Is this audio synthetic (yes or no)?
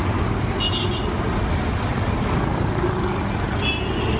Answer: no